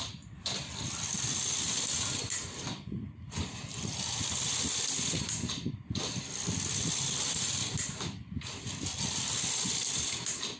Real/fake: real